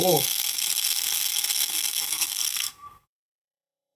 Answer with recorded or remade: remade